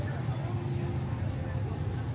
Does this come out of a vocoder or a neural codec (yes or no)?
no